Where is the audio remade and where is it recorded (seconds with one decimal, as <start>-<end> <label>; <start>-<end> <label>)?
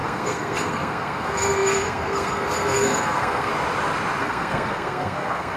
0.0-3.5 remade; 3.5-4.2 recorded; 4.2-5.6 remade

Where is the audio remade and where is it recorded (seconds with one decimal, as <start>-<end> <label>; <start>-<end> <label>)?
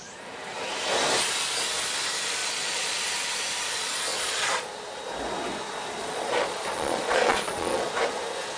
0.0-2.4 recorded; 2.4-3.0 remade; 3.0-4.1 recorded; 4.1-4.7 remade; 4.7-6.0 recorded; 6.0-7.9 remade; 7.9-8.6 recorded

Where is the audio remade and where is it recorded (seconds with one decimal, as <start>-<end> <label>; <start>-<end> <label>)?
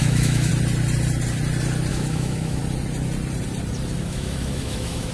0.0-0.5 remade; 0.5-1.9 recorded; 1.9-2.6 remade; 2.6-4.0 recorded; 4.0-5.1 remade